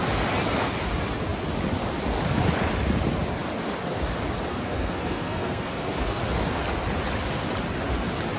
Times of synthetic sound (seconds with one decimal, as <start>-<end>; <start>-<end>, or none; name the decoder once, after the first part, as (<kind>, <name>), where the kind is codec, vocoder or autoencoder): 4.5-6.2 (codec, SNAC)